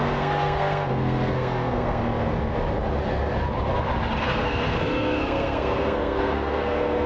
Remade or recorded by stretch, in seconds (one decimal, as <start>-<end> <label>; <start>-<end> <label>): 0.0-2.0 remade; 2.0-4.2 recorded; 4.2-7.1 remade